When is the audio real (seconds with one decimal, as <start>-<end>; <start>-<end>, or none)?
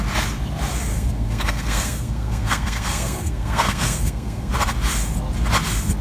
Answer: 0.0-0.9; 4.5-6.0